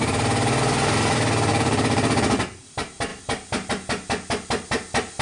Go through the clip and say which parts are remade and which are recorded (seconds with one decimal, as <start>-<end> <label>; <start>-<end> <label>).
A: 0.0-1.5 recorded; 1.5-2.2 remade; 2.2-3.1 recorded; 3.1-3.7 remade; 3.7-5.2 recorded